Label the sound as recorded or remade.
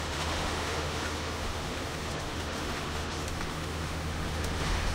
remade